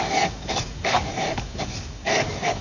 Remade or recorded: remade